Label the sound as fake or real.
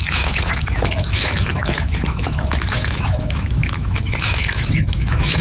fake